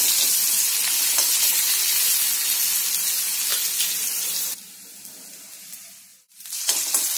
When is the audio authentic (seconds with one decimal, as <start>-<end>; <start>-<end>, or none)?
0.0-3.5; 5.4-6.1; 6.6-7.2